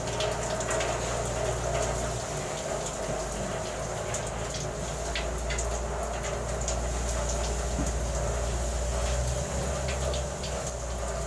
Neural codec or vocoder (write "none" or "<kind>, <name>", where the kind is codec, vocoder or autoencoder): none